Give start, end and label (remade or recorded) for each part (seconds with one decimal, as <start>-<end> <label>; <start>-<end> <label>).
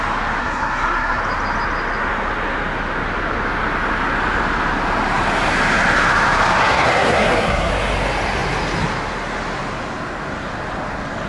0.0-0.4 recorded; 0.4-1.2 remade; 1.2-6.6 recorded; 6.6-7.7 remade; 7.7-11.3 recorded